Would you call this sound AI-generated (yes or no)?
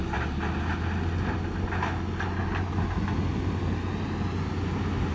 no